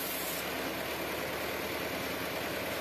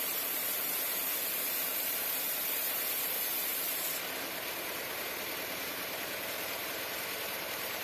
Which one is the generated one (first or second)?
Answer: second